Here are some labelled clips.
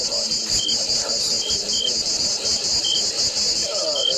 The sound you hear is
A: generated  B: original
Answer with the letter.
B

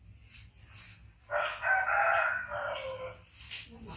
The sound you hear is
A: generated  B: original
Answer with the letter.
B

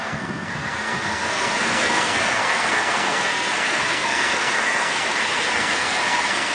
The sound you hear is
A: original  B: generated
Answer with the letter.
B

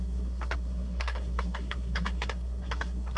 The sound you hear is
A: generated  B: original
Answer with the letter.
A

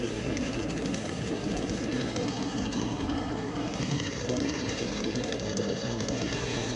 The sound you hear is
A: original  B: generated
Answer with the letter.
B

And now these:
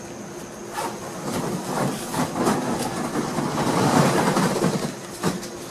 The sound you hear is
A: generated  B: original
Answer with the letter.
B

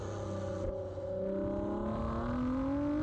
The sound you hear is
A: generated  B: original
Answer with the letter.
B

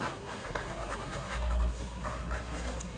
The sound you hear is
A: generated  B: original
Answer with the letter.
A